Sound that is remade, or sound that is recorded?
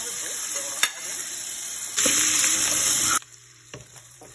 remade